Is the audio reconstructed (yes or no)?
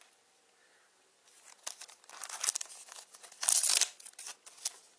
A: no